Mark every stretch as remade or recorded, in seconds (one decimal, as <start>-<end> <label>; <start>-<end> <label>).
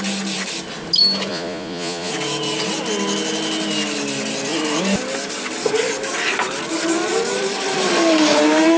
0.0-1.3 recorded; 1.3-2.1 remade; 2.1-8.8 recorded